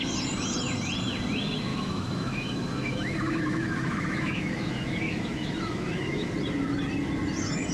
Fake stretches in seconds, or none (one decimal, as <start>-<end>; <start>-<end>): 1.7-6.3